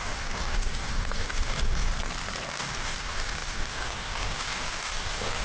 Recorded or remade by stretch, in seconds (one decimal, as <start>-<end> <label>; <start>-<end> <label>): 0.0-1.9 remade; 1.9-2.5 recorded; 2.5-5.4 remade

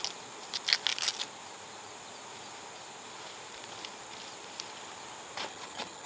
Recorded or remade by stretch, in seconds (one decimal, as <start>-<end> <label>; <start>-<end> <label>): 0.0-5.5 recorded; 5.5-6.1 remade

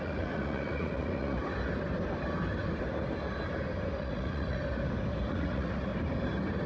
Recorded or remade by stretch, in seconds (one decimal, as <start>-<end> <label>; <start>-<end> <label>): 0.0-1.4 remade; 1.4-4.0 recorded; 4.0-4.6 remade; 4.6-5.3 recorded; 5.3-5.9 remade; 5.9-6.7 recorded

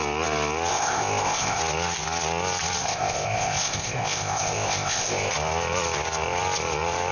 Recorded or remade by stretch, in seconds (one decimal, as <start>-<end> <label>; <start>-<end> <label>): 0.0-0.7 recorded; 0.7-1.6 remade; 1.6-2.8 recorded; 2.8-5.3 remade; 5.3-7.1 recorded

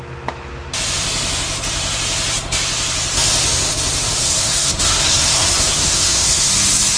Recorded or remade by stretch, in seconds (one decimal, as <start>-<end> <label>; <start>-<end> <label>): 0.0-4.2 recorded; 4.2-6.5 remade; 6.5-7.0 recorded